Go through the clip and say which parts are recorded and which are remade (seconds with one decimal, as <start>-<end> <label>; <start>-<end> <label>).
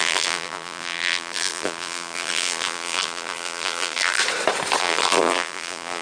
0.0-4.2 remade; 4.2-4.8 recorded; 4.8-6.0 remade